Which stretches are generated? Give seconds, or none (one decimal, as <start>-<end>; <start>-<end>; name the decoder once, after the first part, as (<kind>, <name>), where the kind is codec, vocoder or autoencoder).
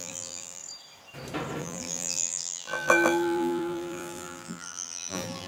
0.0-0.6 (vocoder, BigVGAN v2); 1.6-5.5